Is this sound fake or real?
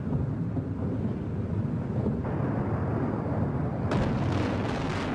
real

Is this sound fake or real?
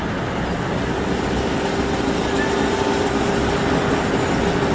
real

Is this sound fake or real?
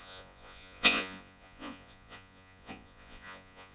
fake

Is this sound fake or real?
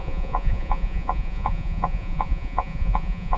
fake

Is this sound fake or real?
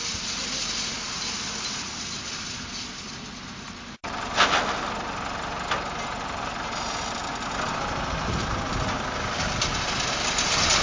real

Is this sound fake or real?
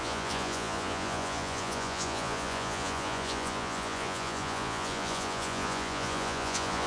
fake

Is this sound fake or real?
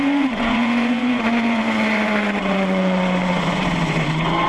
fake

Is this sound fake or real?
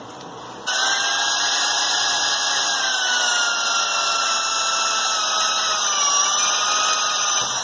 real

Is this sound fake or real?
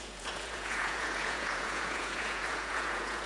fake